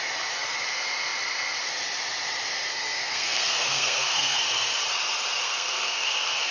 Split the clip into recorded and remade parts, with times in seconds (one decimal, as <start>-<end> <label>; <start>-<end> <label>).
0.0-2.7 recorded; 2.7-4.4 remade; 4.4-5.4 recorded; 5.4-6.5 remade

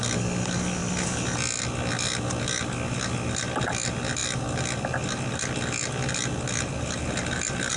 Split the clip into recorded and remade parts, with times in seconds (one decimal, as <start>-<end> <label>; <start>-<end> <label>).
0.0-7.8 recorded